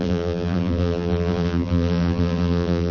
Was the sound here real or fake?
fake